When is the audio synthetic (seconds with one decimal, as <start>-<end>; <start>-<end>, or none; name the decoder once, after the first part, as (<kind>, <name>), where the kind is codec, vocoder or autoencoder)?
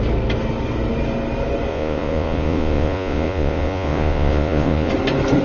1.7-4.9 (vocoder, Vocos)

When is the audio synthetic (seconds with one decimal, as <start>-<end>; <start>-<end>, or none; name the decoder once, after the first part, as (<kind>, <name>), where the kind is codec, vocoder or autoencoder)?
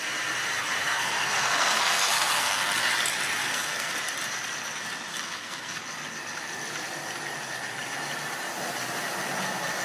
0.8-2.6 (codec, SNAC); 3.4-3.9; 5.1-5.8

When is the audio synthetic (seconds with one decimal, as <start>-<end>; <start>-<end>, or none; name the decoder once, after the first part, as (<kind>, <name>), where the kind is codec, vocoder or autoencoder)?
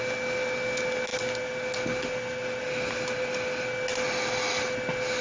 none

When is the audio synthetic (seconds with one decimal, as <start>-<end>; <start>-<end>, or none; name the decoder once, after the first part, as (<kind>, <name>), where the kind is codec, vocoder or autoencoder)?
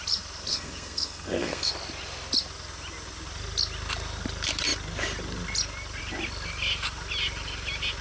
0.5-1.7 (codec, SNAC)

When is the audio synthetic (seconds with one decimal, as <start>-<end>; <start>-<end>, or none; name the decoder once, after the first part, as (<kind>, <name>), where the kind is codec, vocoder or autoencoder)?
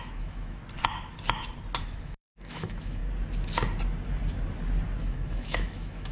0.0-0.6 (autoencoder, DAC-VAE); 1.8-3.0; 5.0-6.1